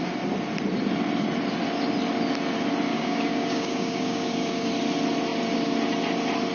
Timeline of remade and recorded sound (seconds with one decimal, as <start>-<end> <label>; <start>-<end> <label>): 0.0-2.9 recorded; 2.9-4.7 remade; 4.7-6.5 recorded